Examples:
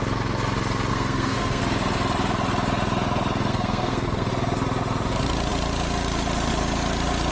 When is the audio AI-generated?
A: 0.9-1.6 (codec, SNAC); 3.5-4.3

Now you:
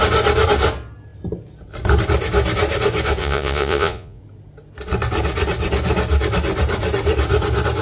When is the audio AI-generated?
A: 3.2-4.2 (vocoder, Vocos)

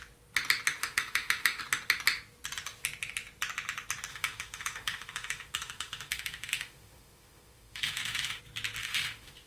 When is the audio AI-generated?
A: 0.8-1.6 (autoencoder, DAC-VAE); 4.1-8.4; 8.8-9.5

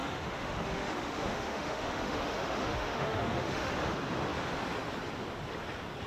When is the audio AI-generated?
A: 0.0-3.7 (autoencoder, DAC-VAE)

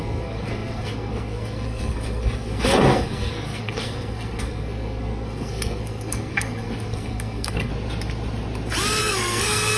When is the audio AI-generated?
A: 0.0-7.7 (codec, SNAC); 9.0-9.8

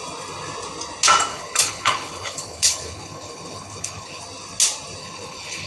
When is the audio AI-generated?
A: 1.3-4.2 (codec, HILCodec); 5.0-5.7

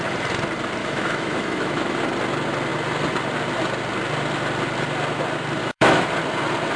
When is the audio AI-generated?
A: 0.8-2.0 (autoencoder, DAC-VAE); 5.6-6.1

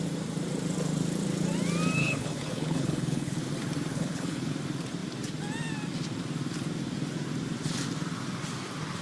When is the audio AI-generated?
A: 2.0-3.4 (codec, HILCodec); 3.9-4.5